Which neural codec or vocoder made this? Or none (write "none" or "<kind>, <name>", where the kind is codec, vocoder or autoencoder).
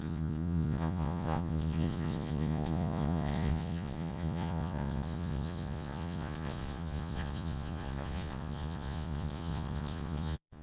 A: vocoder, Vocos